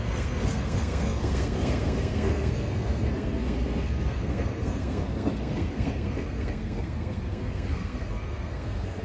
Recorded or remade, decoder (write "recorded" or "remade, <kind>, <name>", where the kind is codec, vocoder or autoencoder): remade, codec, SNAC